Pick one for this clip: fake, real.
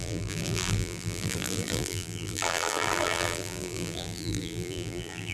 fake